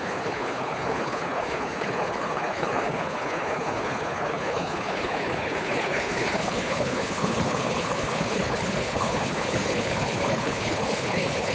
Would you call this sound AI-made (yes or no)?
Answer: yes